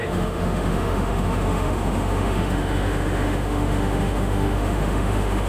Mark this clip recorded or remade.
remade